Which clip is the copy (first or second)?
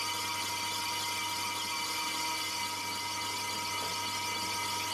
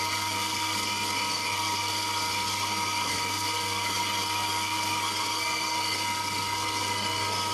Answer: second